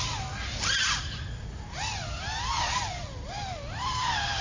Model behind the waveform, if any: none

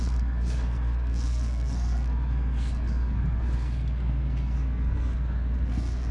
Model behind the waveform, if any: codec, SNAC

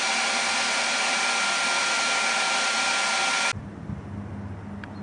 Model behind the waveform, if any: none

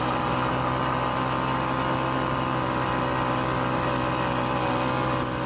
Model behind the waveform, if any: none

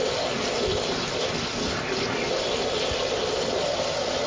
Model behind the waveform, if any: none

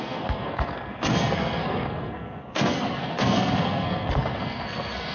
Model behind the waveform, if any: codec, SNAC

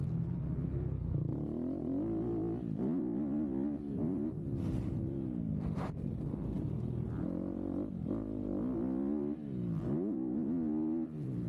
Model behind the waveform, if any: none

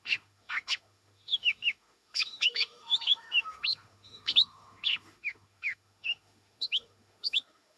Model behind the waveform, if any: autoencoder, DAC-VAE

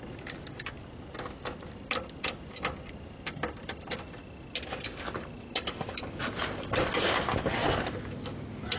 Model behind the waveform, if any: none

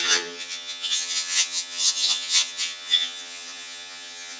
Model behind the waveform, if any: vocoder, HiFi-GAN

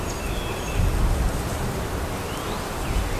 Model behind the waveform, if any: none